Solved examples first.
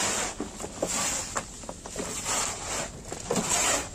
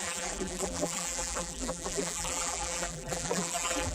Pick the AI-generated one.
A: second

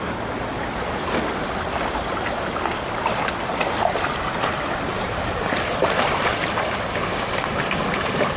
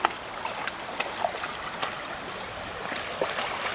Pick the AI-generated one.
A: first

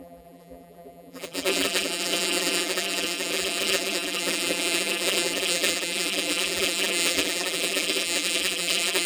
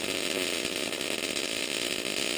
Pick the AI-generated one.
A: first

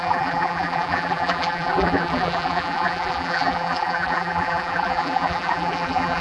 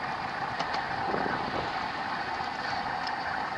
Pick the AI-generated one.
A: first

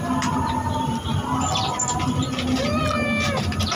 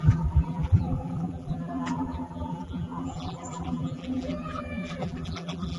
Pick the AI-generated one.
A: second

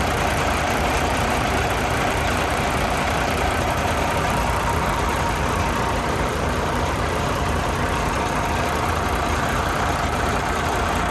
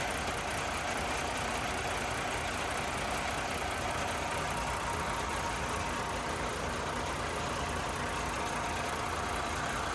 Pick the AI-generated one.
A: first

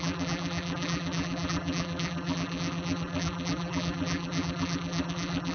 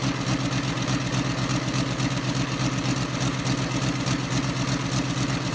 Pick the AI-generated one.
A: first